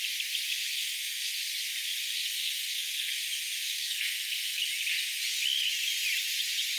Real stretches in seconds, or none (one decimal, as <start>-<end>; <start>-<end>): 0.0-0.5; 1.3-2.0; 3.2-3.6; 4.6-6.8